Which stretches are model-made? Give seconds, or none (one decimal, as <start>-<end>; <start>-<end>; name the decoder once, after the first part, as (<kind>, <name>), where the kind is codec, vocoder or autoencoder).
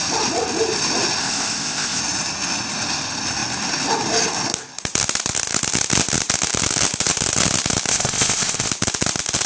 1.2-2.0 (codec, ZipCodec); 7.9-8.7